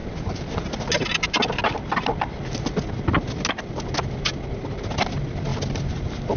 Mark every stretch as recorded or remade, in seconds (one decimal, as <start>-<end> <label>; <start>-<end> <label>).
0.0-6.4 recorded